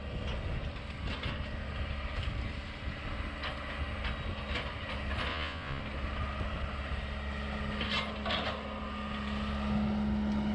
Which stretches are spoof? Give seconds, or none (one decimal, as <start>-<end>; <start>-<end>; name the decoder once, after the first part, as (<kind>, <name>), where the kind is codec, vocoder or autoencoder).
5.3-5.8 (vocoder, Vocos)